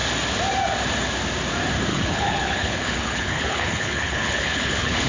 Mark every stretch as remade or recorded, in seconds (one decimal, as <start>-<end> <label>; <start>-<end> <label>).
0.0-1.9 recorded; 1.9-5.1 remade